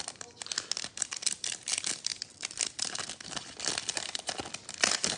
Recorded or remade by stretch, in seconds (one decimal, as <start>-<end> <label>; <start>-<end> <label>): 0.0-5.2 recorded